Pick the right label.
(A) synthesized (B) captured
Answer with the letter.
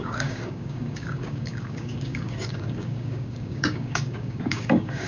A